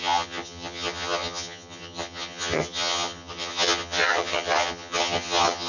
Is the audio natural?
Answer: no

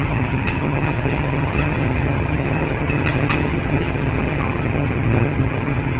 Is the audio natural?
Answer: no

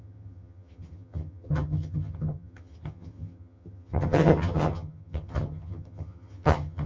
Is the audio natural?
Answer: no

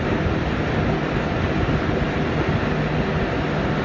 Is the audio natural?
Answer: yes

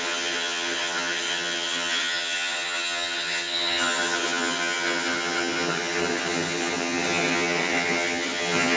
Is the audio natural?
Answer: no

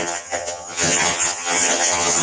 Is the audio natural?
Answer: no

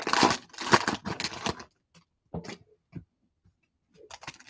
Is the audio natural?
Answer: yes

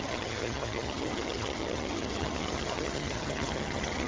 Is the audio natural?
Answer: no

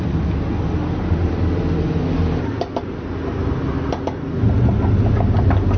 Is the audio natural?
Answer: yes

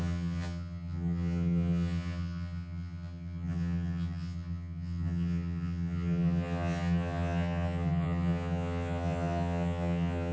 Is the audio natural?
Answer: no